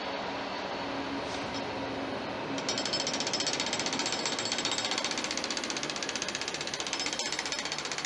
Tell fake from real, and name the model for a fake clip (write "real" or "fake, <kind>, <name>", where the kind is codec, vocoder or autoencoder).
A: real